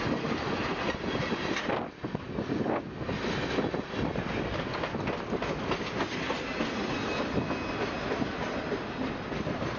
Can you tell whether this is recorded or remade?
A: recorded